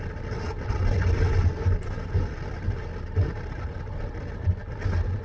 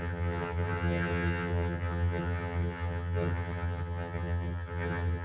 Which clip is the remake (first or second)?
second